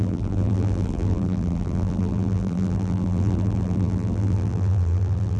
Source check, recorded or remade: remade